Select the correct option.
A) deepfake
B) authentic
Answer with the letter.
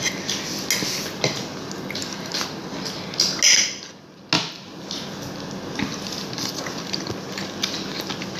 B